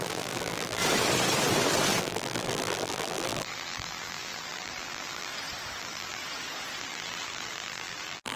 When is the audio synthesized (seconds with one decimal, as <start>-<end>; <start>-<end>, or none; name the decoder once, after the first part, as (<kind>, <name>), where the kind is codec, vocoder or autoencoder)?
0.0-0.8 (vocoder, BigVGAN v2); 2.0-5.3; 5.8-6.2; 6.8-8.4